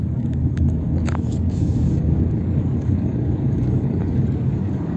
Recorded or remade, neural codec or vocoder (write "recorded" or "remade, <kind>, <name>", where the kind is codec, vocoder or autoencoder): remade, codec, DAC